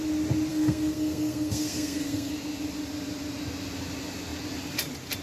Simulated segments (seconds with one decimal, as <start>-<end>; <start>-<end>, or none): 0.5-2.3